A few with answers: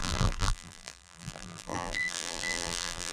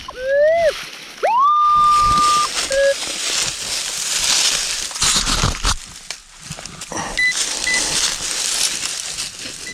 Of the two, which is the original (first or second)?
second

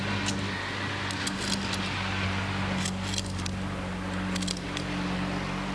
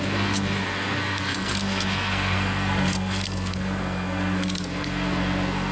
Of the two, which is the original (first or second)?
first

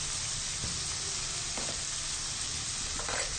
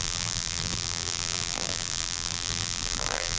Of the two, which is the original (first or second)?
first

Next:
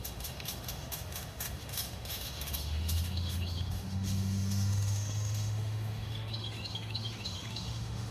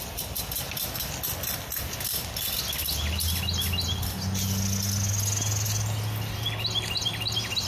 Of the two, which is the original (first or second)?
second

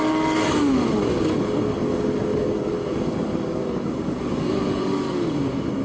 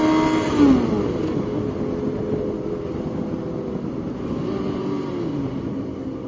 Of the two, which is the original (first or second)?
second